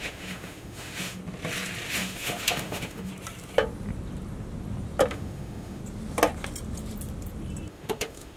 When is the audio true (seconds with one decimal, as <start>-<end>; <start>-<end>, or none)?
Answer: 1.2-1.9; 3.1-5.1; 5.8-7.7